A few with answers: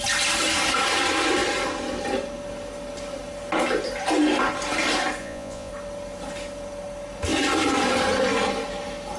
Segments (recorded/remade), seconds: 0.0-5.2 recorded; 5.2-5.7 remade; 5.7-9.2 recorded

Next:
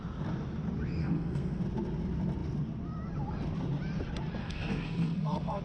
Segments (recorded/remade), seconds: 0.0-1.0 recorded; 1.0-1.6 remade; 1.6-4.4 recorded; 4.4-5.6 remade

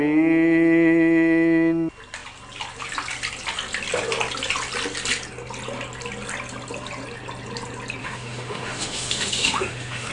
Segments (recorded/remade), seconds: 0.0-8.0 recorded; 8.0-10.1 remade

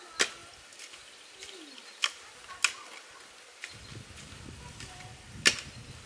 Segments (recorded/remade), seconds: 0.0-6.1 recorded

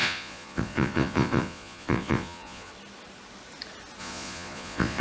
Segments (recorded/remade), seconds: 0.0-2.7 remade; 2.7-4.0 recorded; 4.0-5.0 remade